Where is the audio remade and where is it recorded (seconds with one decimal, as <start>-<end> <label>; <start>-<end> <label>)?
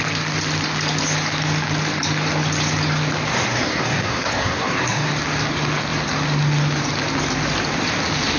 0.0-3.3 recorded; 3.3-5.1 remade; 5.1-8.4 recorded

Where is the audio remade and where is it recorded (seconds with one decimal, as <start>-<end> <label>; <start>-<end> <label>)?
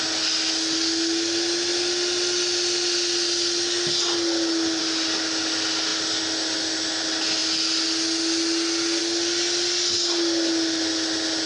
0.0-11.5 recorded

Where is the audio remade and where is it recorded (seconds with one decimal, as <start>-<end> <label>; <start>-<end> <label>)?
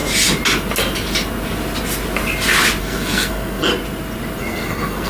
0.0-2.8 recorded; 2.8-3.7 remade; 3.7-4.4 recorded; 4.4-5.1 remade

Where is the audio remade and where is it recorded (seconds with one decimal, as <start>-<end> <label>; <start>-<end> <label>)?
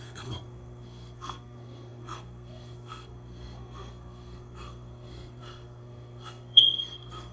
0.0-7.3 remade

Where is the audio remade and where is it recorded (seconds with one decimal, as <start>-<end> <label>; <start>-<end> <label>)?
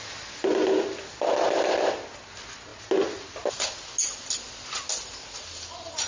0.0-6.1 recorded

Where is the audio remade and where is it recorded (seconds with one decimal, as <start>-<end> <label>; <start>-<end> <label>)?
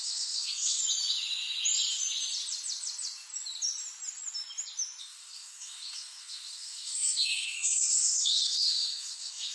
0.0-0.8 remade; 0.8-5.0 recorded; 5.0-9.5 remade